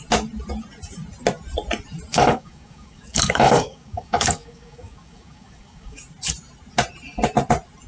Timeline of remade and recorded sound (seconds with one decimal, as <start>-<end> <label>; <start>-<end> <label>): 0.0-2.1 recorded; 2.1-6.0 remade; 6.0-7.9 recorded